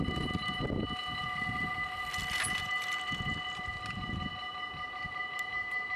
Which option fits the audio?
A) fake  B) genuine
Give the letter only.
B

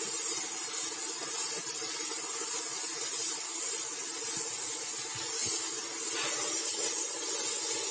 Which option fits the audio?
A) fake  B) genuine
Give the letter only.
B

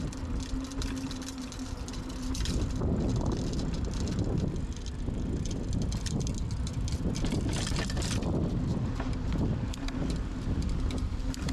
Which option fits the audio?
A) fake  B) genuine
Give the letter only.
B